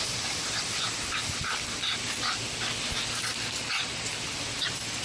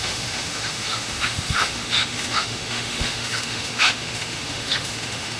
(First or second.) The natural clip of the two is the first